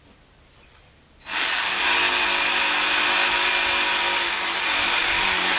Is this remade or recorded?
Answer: recorded